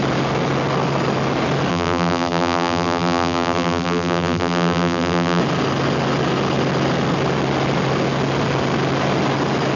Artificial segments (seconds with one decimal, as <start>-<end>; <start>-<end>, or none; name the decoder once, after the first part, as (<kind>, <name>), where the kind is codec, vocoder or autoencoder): 1.7-5.4 (vocoder, BigVGAN v2)